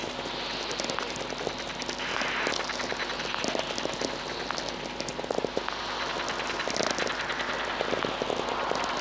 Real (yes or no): yes